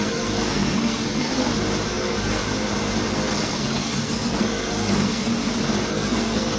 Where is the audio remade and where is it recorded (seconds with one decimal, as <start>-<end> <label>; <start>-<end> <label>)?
0.0-1.3 remade; 1.3-1.9 recorded; 1.9-2.4 remade; 2.4-3.1 recorded; 3.1-5.3 remade; 5.3-5.9 recorded; 5.9-6.6 remade